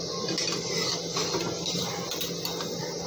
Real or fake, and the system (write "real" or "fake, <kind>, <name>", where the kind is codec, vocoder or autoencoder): real